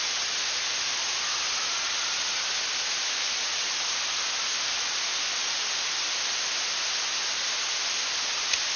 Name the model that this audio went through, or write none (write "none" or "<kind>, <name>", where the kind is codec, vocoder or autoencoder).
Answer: none